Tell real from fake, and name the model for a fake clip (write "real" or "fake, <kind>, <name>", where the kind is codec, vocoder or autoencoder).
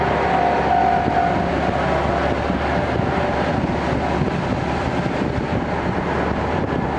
real